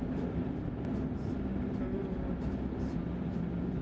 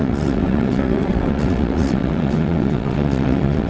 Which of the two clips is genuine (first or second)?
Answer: first